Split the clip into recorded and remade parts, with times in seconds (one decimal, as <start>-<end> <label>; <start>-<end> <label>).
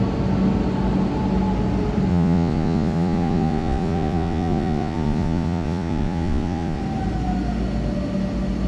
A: 0.0-2.1 recorded; 2.1-6.8 remade; 6.8-8.7 recorded